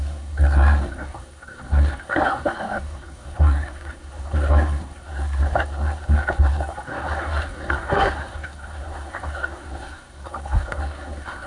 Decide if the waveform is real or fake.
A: fake